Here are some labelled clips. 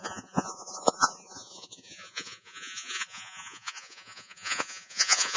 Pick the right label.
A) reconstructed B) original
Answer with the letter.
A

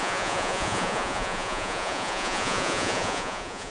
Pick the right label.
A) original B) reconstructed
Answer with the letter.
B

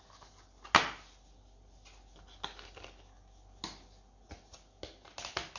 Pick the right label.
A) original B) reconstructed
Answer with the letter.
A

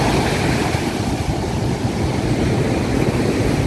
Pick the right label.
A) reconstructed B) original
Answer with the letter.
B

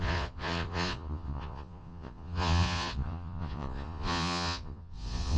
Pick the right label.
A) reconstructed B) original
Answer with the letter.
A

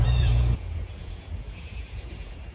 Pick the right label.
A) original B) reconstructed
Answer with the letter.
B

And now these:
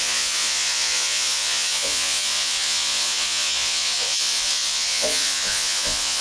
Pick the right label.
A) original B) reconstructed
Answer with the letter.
B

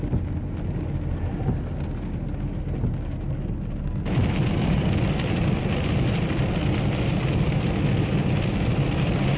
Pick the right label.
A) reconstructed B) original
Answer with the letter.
B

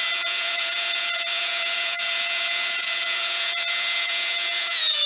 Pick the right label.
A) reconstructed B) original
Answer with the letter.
A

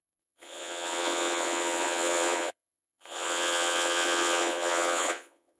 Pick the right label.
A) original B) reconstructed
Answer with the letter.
B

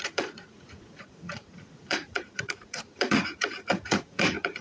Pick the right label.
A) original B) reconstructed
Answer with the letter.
B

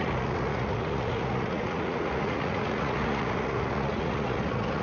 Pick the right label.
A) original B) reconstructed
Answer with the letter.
B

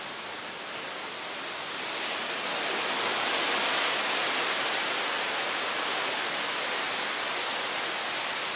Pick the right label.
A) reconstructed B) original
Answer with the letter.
B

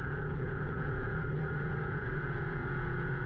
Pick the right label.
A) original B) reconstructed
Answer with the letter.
B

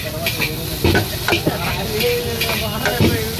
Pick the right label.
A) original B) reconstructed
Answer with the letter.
A